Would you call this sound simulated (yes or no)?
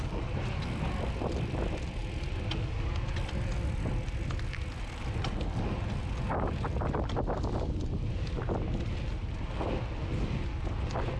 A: no